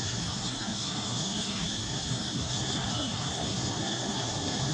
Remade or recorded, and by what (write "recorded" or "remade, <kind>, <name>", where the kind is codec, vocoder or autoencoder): remade, codec, SNAC